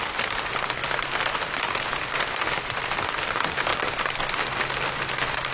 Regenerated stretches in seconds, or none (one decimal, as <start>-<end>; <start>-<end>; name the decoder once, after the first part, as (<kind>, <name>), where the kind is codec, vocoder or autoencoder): 0.8-3.1 (vocoder, BigVGAN v2); 3.7-4.4